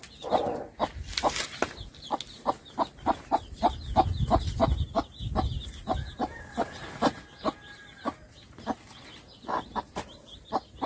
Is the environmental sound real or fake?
real